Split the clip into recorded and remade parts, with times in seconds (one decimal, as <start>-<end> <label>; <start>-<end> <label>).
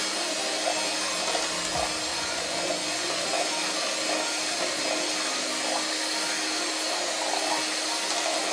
0.0-2.1 recorded; 2.1-3.2 remade; 3.2-8.5 recorded